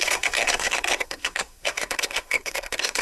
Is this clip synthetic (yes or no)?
yes